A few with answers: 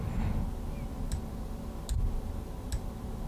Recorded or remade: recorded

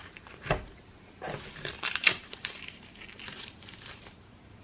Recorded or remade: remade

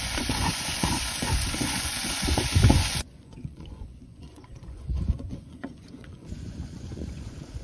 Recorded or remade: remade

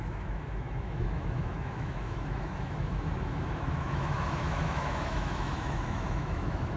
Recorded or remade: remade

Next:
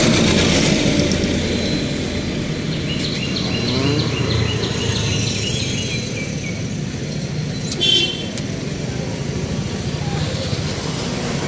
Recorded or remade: recorded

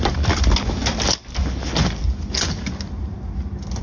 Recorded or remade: recorded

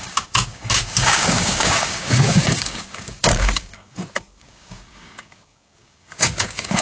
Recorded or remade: remade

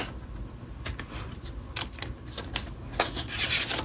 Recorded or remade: recorded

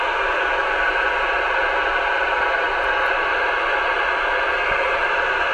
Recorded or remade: recorded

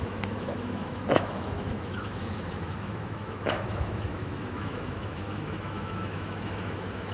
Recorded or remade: remade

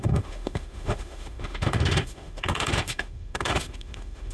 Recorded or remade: remade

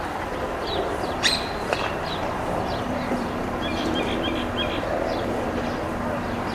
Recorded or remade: remade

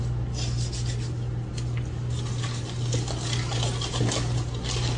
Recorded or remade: recorded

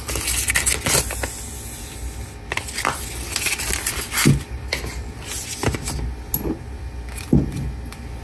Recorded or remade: recorded